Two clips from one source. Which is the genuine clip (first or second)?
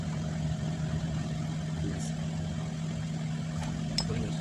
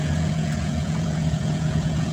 first